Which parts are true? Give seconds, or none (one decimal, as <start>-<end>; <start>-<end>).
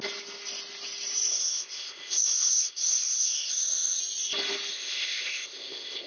0.0-1.3; 4.0-4.7